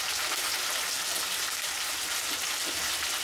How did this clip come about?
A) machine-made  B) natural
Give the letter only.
B